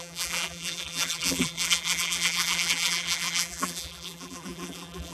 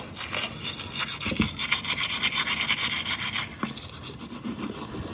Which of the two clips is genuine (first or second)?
second